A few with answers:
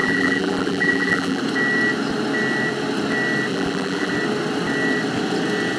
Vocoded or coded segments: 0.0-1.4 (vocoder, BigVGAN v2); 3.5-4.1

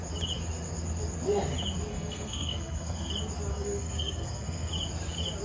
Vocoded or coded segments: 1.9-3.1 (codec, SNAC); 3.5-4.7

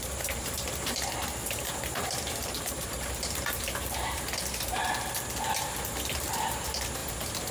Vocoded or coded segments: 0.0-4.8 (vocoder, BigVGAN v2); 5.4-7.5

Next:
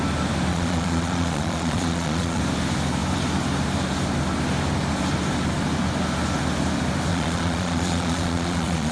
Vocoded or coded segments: 0.5-2.4 (vocoder, Vocos); 7.1-8.9

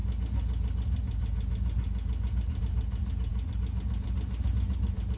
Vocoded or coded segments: none

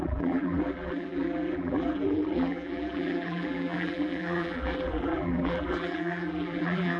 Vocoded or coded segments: 0.0-7.0 (vocoder, BigVGAN v2)

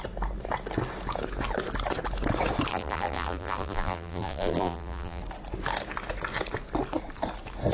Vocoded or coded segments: 2.7-5.2 (vocoder, BigVGAN v2)

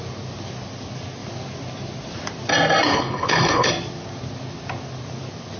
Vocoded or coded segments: 2.9-3.7 (codec, HILCodec)